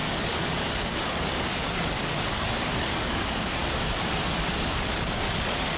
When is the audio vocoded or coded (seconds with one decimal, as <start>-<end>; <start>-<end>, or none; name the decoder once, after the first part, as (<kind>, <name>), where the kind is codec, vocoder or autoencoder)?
0.0-3.6 (codec, DAC); 4.5-5.8